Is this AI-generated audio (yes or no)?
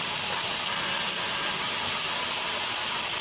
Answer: yes